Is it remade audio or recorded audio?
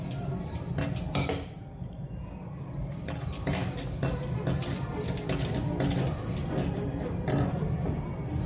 remade